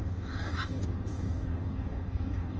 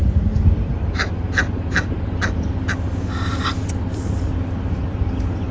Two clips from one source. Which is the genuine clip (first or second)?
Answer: second